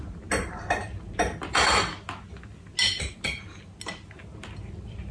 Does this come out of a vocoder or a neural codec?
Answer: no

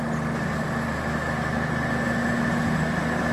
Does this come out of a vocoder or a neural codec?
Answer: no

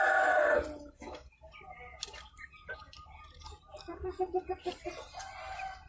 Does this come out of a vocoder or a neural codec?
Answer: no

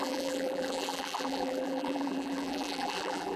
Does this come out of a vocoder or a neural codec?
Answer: yes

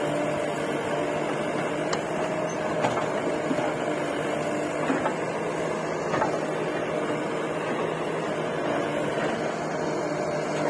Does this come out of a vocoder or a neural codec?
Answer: no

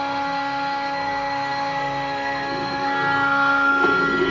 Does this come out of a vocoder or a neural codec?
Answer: yes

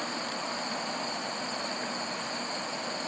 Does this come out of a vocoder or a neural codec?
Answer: yes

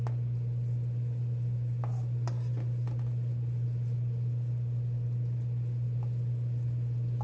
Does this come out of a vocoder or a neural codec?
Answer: no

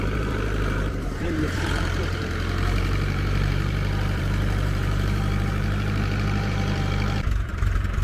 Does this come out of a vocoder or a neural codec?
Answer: yes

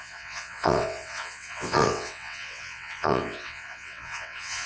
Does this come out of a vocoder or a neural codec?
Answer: yes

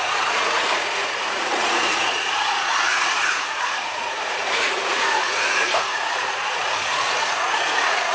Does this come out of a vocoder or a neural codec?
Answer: yes